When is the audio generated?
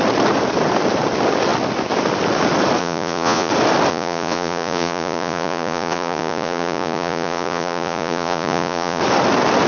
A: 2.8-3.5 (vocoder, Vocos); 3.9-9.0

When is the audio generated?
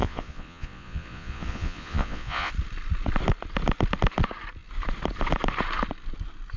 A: 0.0-2.5 (vocoder, Vocos)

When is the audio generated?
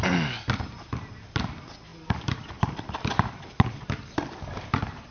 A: 1.9-3.4 (vocoder, BigVGAN v2)